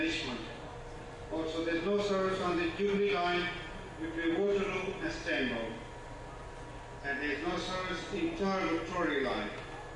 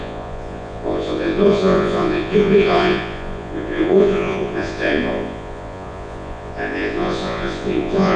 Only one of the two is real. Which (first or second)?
first